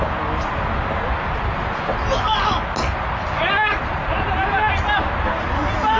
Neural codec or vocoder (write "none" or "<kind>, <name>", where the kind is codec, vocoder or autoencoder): none